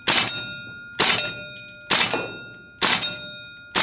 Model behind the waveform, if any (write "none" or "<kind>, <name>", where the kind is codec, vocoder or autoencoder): none